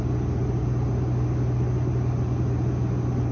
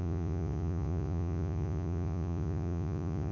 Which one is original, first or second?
first